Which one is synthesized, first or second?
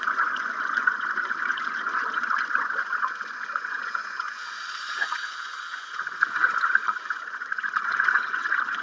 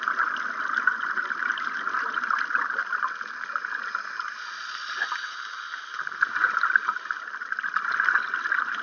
first